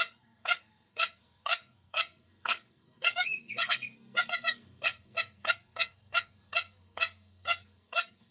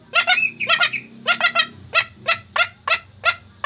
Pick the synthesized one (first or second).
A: first